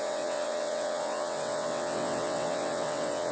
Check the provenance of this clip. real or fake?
fake